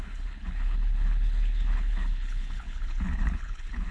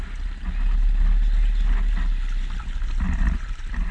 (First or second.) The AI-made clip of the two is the first